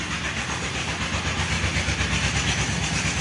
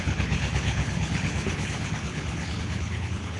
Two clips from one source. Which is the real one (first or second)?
first